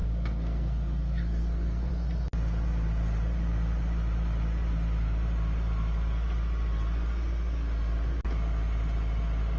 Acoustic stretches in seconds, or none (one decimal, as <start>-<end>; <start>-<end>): 1.9-9.6